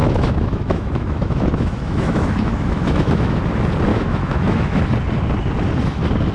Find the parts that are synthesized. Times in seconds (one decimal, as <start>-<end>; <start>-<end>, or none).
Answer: 0.0-3.4; 3.9-4.8

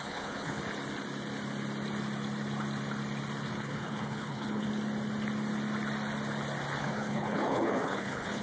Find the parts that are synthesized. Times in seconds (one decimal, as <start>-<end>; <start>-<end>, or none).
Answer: 0.0-0.6; 3.5-4.7; 6.8-8.4

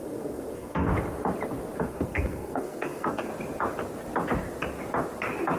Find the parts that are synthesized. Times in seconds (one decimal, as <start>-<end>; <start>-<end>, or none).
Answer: 0.0-0.9; 1.8-3.3

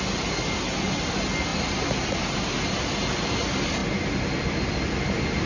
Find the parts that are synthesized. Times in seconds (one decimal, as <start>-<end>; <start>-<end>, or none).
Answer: none